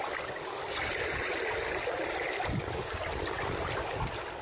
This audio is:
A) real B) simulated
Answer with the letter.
A